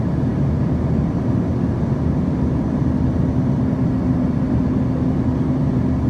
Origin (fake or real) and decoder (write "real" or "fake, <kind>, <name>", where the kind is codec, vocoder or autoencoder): real